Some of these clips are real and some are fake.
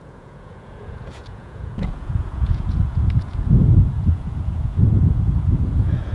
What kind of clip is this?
fake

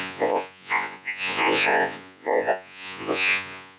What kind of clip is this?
fake